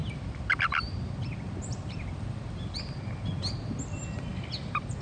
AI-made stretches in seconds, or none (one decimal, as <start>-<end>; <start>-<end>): 0.0-3.0